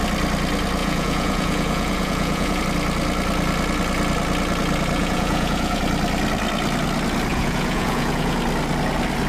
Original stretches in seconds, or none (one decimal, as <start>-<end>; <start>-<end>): 0.0-0.8; 2.6-5.0; 5.8-7.3; 8.4-9.3